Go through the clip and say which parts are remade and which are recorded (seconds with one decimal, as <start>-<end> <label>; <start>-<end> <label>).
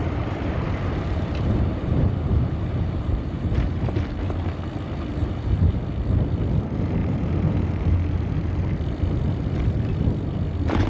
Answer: 0.0-4.0 remade; 4.0-5.2 recorded; 5.2-5.8 remade; 5.8-7.0 recorded; 7.0-8.7 remade; 8.7-10.9 recorded